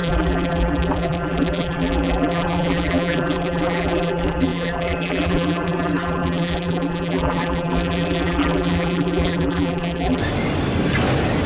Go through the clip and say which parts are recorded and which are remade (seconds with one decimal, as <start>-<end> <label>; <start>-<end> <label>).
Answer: 0.0-10.2 remade; 10.2-11.5 recorded